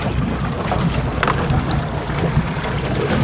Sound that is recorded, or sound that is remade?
recorded